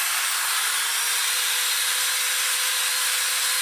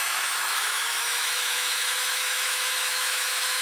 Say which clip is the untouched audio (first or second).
first